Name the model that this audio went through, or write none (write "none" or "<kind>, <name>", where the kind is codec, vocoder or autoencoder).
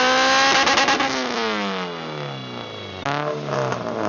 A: none